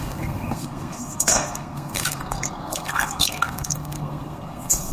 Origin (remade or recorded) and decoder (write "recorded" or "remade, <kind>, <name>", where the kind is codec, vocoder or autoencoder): remade, codec, SNAC